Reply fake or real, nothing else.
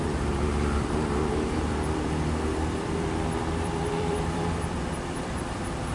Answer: fake